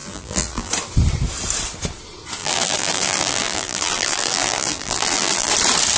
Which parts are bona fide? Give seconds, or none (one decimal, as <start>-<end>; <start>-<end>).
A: 0.7-2.4; 5.5-6.0